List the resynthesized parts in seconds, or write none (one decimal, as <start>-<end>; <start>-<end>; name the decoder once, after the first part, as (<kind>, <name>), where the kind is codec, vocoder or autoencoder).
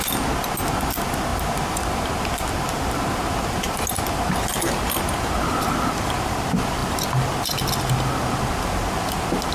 none